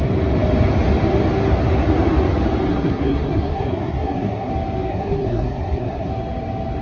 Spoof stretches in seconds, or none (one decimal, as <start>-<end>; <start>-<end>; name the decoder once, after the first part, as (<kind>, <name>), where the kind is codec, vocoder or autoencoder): 2.7-4.5 (codec, SNAC); 4.9-6.1